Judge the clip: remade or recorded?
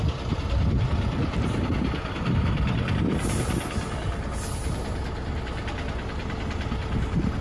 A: recorded